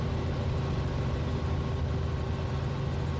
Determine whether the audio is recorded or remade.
recorded